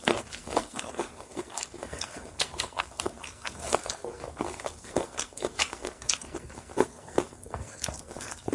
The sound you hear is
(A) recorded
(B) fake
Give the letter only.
B